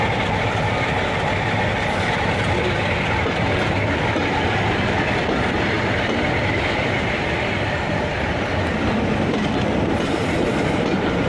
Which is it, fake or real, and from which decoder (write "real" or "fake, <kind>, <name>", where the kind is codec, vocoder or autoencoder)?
real